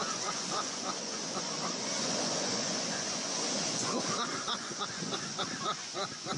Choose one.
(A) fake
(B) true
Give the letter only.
A